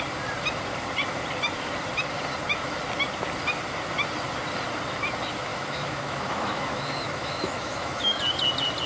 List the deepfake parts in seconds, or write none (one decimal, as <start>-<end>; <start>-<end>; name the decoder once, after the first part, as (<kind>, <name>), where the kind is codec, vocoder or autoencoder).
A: 5.5-8.2 (autoencoder, DAC-VAE)

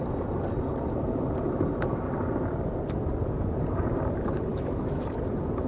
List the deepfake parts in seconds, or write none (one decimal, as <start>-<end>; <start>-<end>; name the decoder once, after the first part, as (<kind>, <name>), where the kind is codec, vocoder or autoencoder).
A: 4.5-5.0 (autoencoder, DAC-VAE)